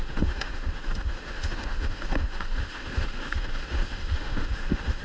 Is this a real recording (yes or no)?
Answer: no